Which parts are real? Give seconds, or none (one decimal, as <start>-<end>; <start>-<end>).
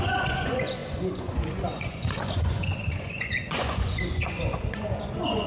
none